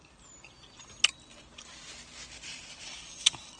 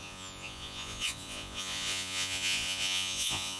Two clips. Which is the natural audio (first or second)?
first